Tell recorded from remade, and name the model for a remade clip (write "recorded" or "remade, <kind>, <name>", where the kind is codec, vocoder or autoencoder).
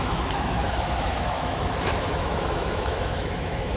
remade, autoencoder, DAC-VAE